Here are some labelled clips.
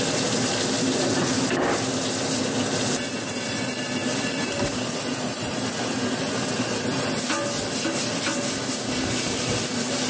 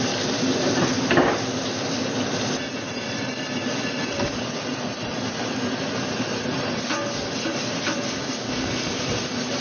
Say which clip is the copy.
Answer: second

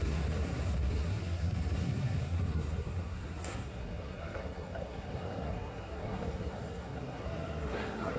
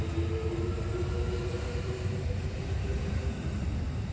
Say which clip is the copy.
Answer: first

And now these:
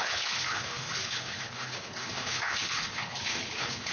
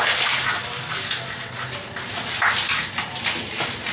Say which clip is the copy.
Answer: first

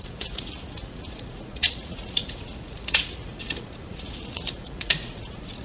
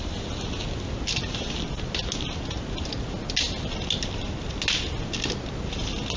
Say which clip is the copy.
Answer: first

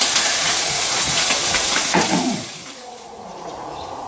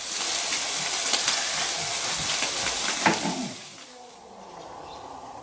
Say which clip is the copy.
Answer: first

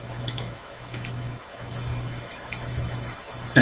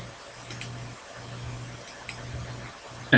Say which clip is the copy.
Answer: first